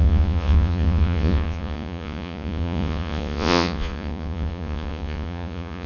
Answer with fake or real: fake